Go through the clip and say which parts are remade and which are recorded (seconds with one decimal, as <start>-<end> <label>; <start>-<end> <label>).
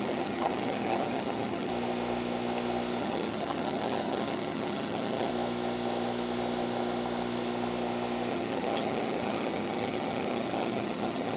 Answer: 0.0-1.7 remade; 1.7-3.0 recorded; 3.0-5.3 remade; 5.3-8.3 recorded; 8.3-11.4 remade